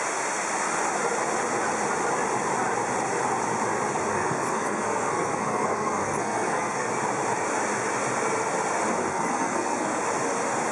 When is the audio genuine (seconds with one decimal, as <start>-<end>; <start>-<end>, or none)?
0.0-4.1; 6.9-9.1; 10.0-10.7